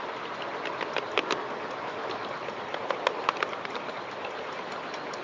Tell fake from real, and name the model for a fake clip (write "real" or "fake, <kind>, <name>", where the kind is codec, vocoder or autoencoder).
real